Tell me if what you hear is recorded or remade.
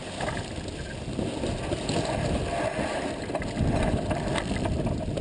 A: recorded